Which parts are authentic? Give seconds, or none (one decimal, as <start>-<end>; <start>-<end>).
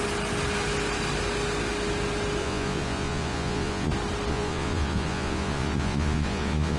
0.0-2.4; 3.9-4.3